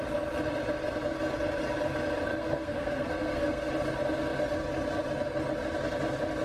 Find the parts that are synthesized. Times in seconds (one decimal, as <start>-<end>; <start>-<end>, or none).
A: 2.3-3.7